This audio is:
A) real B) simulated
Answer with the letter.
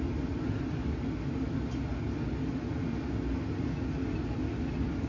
A